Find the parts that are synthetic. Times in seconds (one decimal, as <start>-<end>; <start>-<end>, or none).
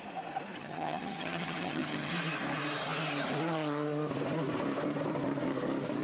0.6-2.1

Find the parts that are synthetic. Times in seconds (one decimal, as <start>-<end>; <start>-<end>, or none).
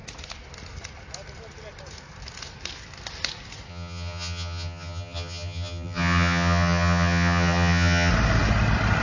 3.7-8.1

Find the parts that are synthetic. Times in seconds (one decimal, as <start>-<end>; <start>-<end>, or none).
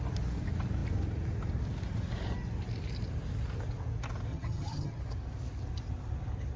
4.3-5.0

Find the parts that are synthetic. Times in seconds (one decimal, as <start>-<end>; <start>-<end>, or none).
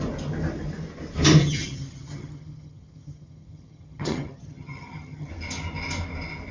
1.4-5.3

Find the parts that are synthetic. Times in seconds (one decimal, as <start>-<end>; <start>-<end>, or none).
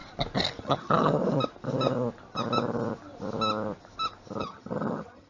0.6-1.2; 4.4-5.3